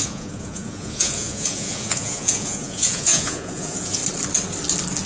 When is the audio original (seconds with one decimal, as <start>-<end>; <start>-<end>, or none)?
4.0-5.1